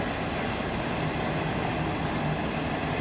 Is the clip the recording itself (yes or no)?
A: yes